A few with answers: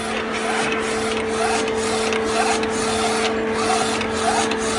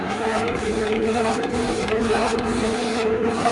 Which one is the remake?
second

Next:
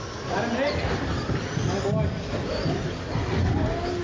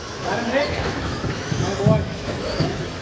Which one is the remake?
second